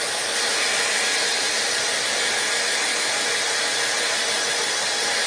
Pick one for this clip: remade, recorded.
recorded